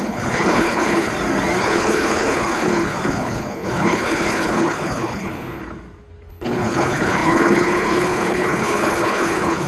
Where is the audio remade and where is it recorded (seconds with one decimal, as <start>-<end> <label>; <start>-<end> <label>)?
0.0-1.1 remade; 1.1-1.6 recorded; 1.6-5.6 remade; 5.6-6.3 recorded; 6.3-9.7 remade